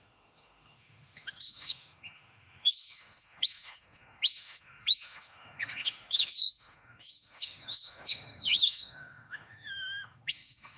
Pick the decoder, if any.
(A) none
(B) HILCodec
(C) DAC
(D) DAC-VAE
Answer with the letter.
D